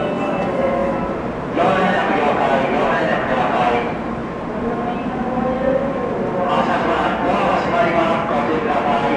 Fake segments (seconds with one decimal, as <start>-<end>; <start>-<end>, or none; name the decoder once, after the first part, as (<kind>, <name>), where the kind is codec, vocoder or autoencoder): 4.2-5.1 (vocoder, BigVGAN v2)